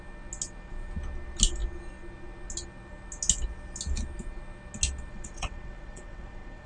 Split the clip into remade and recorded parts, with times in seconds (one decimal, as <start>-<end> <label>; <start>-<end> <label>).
0.0-5.1 recorded; 5.1-6.7 remade